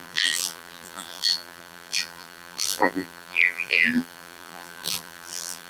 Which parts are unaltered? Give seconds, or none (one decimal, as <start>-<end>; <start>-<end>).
none